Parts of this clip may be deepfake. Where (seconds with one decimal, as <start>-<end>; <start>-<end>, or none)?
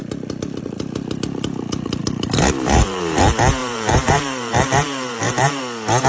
2.0-3.2; 3.6-5.6